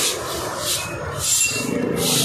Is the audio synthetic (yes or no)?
no